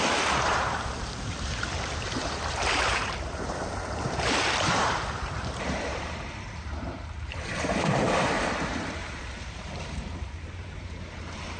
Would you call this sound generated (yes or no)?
yes